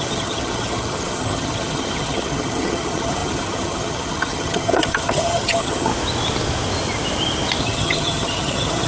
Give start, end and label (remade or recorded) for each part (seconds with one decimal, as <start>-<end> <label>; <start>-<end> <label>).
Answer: 0.0-5.9 remade; 5.9-7.6 recorded; 7.6-8.9 remade